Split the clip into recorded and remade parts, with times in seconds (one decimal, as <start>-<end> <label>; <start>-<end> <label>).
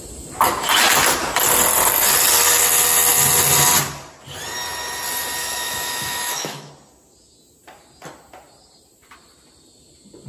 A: 0.0-5.4 recorded; 5.4-6.7 remade; 6.7-10.3 recorded